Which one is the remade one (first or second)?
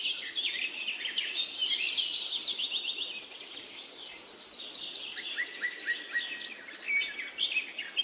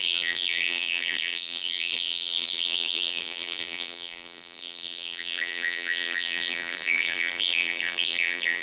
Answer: second